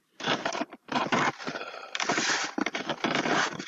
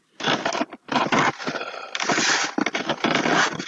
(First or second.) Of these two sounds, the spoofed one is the first